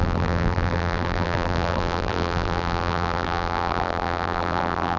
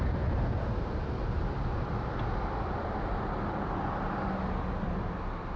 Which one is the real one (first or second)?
second